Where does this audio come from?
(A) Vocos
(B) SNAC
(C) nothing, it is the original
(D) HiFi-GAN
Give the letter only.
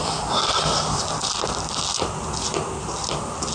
C